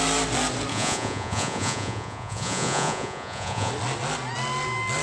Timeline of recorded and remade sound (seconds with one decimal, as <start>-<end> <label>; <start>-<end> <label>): 0.0-0.7 recorded; 0.7-3.7 remade; 3.7-5.0 recorded